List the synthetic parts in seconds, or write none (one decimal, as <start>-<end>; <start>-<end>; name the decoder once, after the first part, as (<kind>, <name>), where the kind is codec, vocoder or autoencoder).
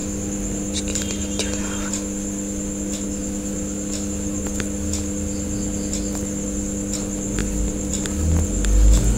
none